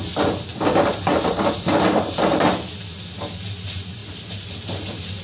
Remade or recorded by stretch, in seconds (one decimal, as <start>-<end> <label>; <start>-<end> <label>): 0.0-5.2 recorded